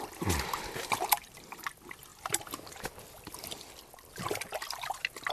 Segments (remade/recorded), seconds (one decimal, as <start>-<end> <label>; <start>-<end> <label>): 0.0-5.3 recorded